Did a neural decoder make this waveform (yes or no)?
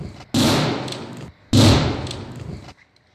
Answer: no